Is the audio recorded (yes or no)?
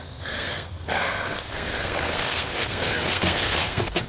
no